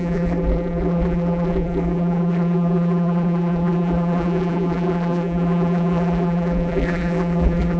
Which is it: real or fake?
fake